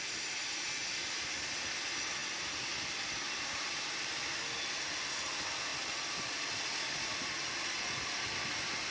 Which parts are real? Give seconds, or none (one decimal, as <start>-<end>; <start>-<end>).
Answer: 0.0-8.9